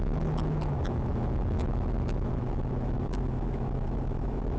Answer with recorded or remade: remade